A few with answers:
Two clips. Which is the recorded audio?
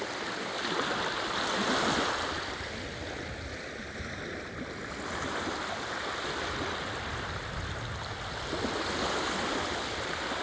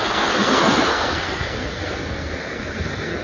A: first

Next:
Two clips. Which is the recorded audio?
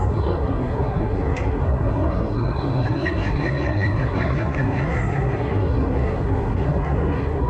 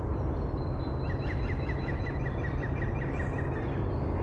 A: second